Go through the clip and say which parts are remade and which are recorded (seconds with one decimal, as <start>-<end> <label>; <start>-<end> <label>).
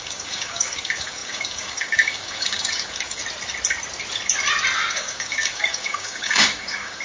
0.0-3.2 remade; 3.2-4.9 recorded; 4.9-7.0 remade